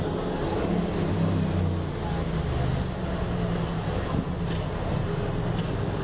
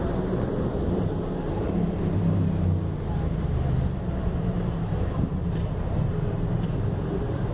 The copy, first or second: second